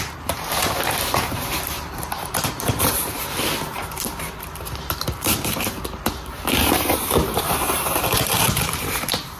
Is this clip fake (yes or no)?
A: yes